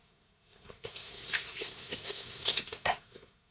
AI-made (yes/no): yes